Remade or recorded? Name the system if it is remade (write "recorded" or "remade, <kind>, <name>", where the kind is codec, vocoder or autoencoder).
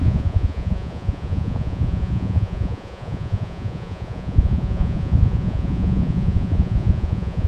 remade, vocoder, Vocos